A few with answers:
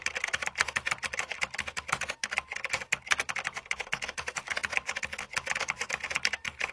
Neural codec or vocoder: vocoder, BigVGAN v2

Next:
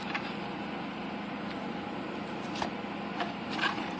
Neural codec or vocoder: vocoder, BigVGAN v2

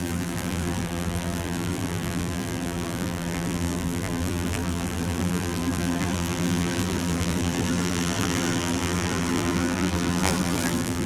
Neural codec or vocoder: vocoder, BigVGAN v2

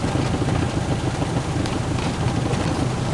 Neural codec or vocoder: none